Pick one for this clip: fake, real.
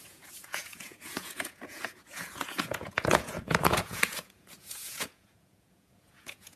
fake